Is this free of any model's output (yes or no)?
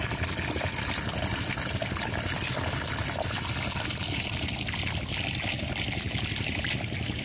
yes